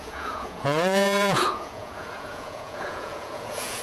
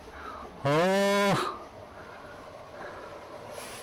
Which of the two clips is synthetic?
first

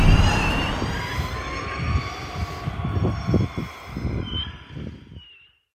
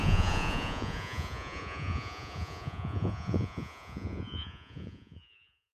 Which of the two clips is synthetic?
second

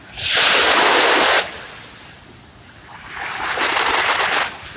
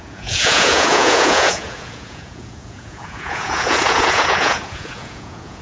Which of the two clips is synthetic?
second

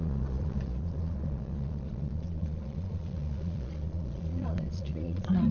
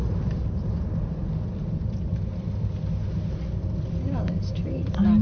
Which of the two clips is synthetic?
first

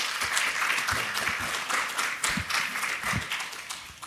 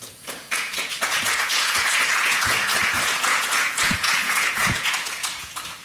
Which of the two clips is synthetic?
second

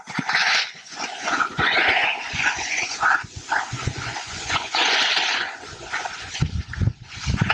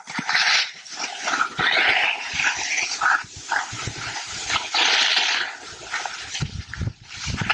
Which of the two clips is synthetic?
first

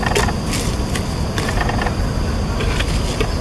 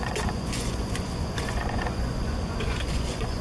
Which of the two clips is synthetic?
second